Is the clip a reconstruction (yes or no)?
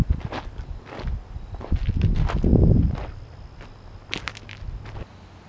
no